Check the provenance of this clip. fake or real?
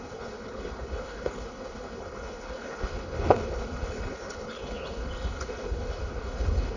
fake